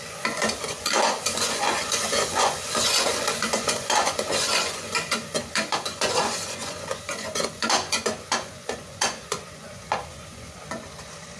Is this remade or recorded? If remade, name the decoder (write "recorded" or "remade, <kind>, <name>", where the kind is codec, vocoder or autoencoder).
remade, vocoder, Vocos